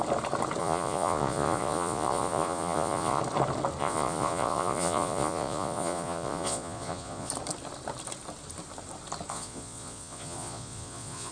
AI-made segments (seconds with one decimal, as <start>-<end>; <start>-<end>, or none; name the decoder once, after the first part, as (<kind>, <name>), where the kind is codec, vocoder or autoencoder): 0.6-3.2 (vocoder, Vocos); 3.8-7.3; 9.3-11.3